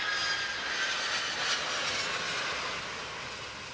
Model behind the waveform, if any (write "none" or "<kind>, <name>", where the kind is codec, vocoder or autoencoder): none